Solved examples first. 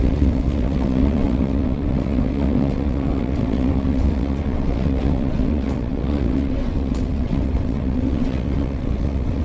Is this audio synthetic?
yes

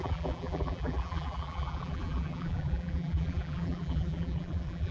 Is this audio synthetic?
yes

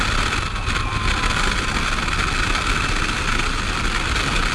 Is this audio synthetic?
no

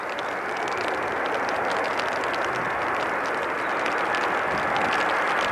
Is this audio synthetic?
no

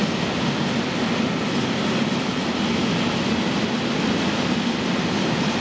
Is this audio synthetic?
no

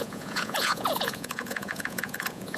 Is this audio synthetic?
yes